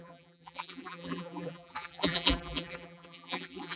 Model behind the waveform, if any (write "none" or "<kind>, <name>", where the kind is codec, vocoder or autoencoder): vocoder, BigVGAN v2